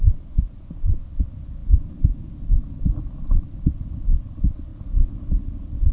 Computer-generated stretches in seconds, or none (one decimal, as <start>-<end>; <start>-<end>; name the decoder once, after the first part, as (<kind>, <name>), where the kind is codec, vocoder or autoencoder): none